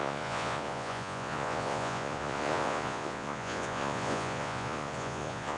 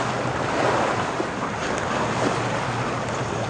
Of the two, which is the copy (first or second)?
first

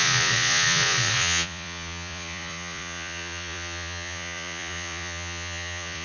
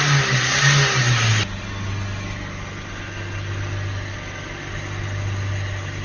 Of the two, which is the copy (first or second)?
first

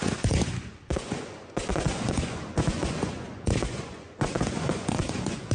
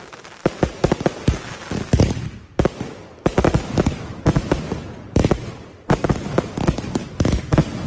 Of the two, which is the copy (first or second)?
first